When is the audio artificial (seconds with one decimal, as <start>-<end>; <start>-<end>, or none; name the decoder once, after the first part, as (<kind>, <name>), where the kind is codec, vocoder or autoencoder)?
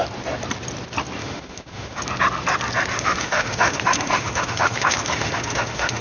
1.2-2.0 (autoencoder, DAC-VAE); 2.9-6.0